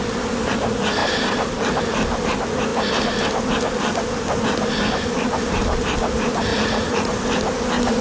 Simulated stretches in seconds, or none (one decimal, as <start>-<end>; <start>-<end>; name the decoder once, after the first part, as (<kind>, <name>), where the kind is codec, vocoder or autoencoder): 6.5-7.1 (vocoder, Vocos)